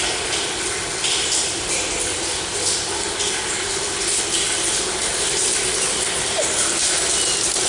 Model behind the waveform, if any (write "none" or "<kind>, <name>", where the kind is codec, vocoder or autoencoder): none